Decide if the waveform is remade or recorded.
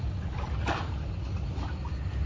recorded